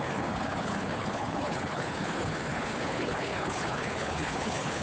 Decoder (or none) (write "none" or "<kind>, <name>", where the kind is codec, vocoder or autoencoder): codec, HILCodec